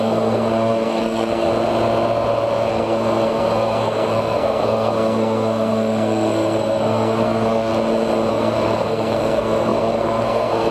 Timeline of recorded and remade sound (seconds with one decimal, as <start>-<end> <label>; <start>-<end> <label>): 0.0-1.5 remade; 1.5-2.7 recorded; 2.7-7.7 remade; 7.7-8.3 recorded; 8.3-10.7 remade